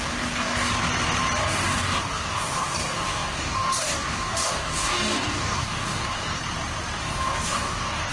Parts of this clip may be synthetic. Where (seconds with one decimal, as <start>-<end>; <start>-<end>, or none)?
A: 0.0-0.7; 1.4-6.4; 7.0-8.1